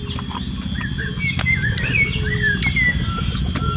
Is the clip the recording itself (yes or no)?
yes